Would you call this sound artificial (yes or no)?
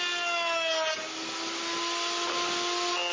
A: no